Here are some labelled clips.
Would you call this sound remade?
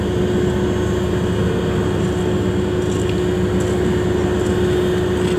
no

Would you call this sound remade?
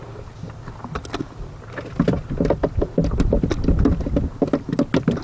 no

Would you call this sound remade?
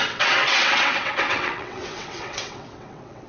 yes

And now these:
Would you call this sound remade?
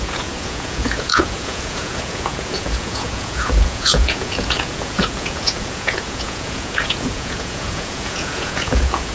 yes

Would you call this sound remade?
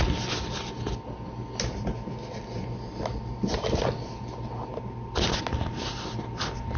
no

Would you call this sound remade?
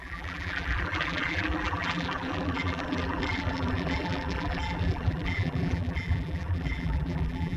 yes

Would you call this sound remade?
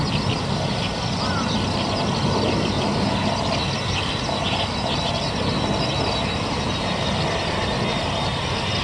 no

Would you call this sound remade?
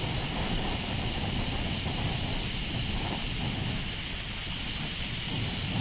no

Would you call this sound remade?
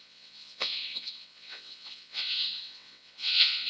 yes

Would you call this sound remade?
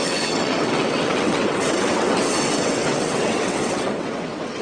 yes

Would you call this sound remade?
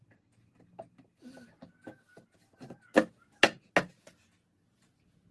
no